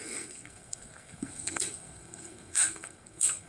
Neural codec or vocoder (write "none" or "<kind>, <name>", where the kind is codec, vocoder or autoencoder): codec, SNAC